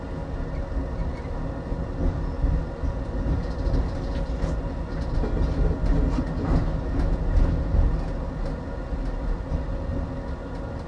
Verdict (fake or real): real